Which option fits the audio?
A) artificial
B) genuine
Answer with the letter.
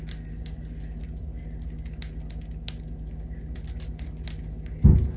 B